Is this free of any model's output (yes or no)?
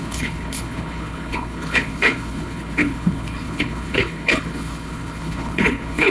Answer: no